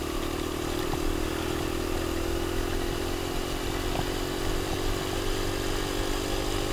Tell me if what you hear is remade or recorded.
recorded